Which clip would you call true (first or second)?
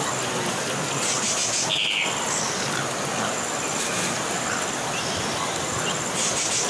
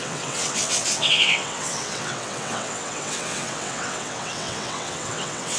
first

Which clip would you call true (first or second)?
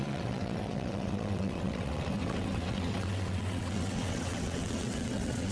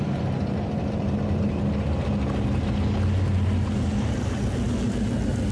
second